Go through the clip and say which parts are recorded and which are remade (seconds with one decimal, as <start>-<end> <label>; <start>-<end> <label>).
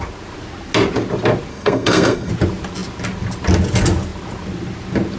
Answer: 0.0-1.5 recorded; 1.5-2.3 remade; 2.3-5.2 recorded